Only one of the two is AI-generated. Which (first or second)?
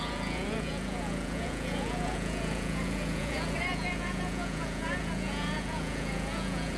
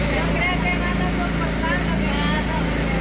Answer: first